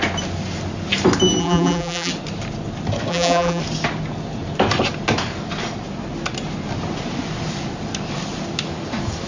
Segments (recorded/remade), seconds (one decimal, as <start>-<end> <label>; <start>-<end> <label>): 0.0-1.4 recorded; 1.4-2.1 remade; 2.1-3.1 recorded; 3.1-3.6 remade; 3.6-9.3 recorded